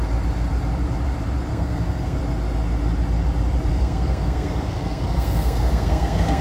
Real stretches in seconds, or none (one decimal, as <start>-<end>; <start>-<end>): 0.0-1.5; 2.2-3.7